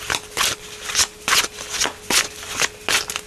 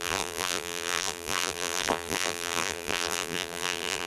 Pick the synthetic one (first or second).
second